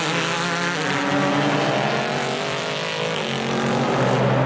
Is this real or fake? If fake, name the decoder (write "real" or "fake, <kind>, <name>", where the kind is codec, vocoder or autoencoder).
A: real